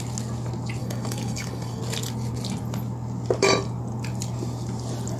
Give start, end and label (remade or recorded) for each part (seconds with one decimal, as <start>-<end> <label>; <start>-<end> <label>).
0.0-0.8 recorded; 0.8-1.8 remade; 1.8-5.2 recorded